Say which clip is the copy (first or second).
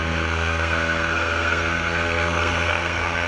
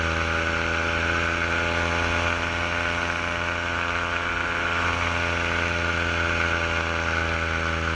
first